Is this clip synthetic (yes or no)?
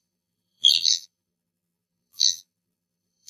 yes